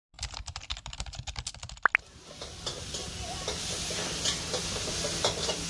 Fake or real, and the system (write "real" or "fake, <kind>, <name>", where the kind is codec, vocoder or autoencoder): real